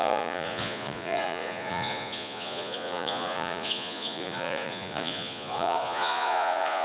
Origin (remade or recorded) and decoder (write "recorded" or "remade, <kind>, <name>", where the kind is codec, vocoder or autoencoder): remade, vocoder, Vocos